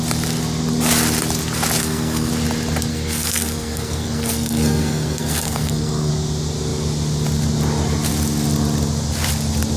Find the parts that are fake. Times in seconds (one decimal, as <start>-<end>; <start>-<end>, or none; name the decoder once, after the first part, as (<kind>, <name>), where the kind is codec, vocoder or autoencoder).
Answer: 1.8-2.3 (codec, SNAC); 2.9-6.1